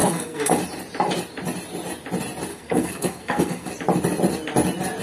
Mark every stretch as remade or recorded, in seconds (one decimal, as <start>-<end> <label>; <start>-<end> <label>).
0.0-0.5 remade; 0.5-2.5 recorded; 2.5-3.7 remade; 3.7-5.0 recorded